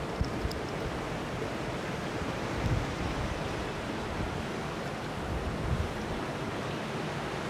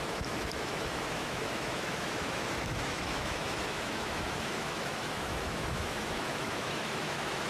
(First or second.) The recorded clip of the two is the first